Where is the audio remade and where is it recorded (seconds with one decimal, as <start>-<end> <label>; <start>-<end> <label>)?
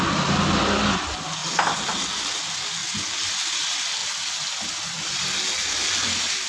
0.0-6.5 recorded